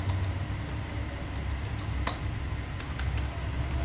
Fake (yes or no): no